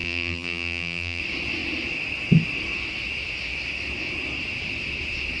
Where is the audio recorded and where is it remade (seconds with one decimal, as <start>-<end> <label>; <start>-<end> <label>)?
0.0-1.2 remade; 1.2-5.4 recorded